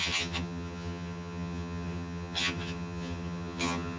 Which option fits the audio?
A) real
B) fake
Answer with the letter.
B